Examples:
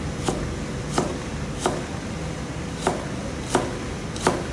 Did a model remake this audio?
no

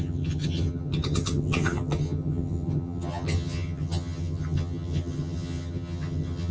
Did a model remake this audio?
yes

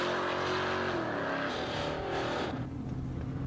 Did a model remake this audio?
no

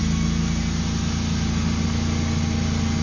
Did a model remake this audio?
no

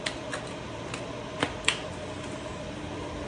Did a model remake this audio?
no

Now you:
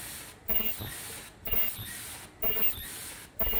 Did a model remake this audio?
no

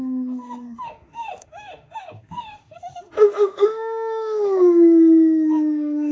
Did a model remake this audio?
yes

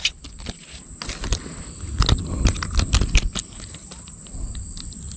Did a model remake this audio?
no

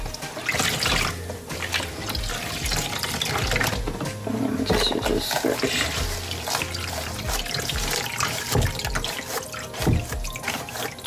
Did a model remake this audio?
no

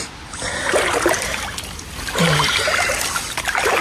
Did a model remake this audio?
no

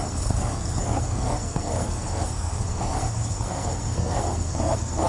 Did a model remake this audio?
yes